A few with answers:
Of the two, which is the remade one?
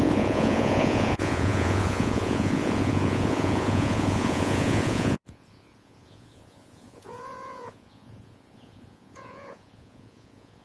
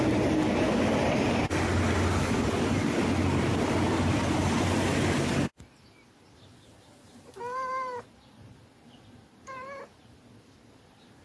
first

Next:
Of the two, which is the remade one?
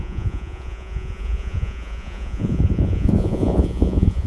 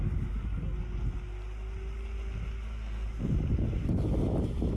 first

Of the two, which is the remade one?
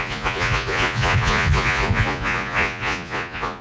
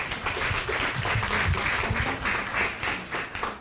first